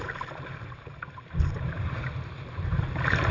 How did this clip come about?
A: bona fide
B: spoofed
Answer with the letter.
B